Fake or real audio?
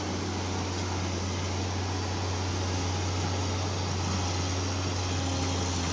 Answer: real